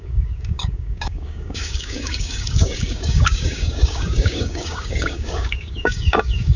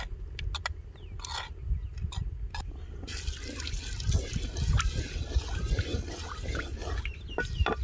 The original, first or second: second